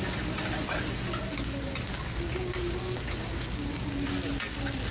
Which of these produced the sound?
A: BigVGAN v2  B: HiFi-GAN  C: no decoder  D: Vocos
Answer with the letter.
C